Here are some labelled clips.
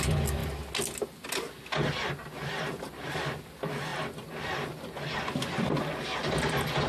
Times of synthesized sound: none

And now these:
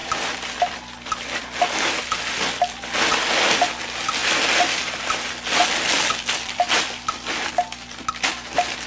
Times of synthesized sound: none

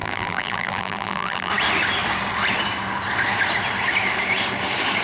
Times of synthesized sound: 0.0-1.5 (vocoder, BigVGAN v2)

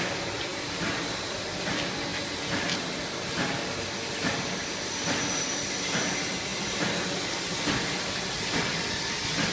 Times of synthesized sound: 0.5-1.4 (vocoder, BigVGAN v2)

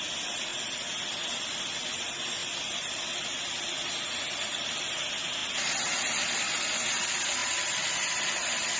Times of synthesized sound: 2.4-3.7 (vocoder, BigVGAN v2); 7.4-8.8

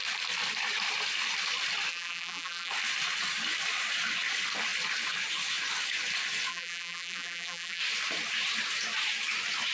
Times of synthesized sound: 1.9-2.7 (vocoder, BigVGAN v2); 6.5-7.8